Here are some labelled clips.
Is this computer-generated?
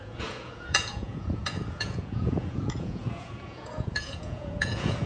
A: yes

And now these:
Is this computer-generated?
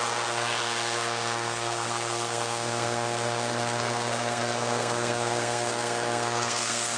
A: yes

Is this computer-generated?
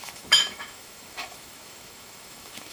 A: yes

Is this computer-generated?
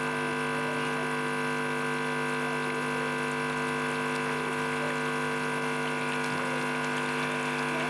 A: no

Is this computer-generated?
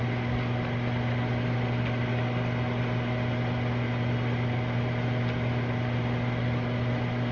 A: no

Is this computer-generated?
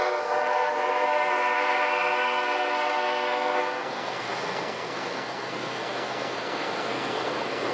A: yes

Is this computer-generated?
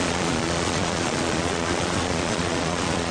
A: yes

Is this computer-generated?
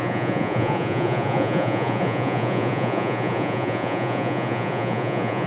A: yes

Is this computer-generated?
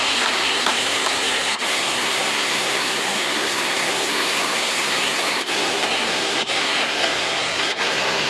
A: yes